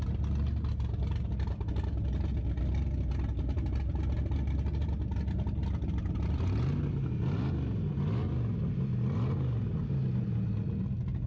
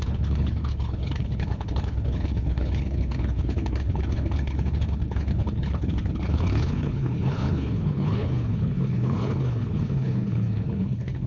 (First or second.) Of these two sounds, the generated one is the second